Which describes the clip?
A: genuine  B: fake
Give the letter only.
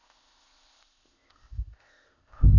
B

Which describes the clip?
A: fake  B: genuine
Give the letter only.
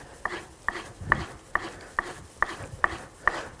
B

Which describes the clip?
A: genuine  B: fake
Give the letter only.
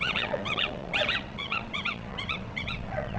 B